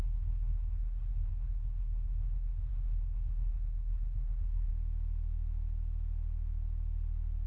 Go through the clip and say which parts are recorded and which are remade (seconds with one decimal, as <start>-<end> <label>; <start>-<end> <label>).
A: 0.0-4.7 remade; 4.7-7.5 recorded